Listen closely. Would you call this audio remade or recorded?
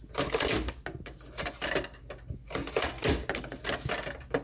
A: recorded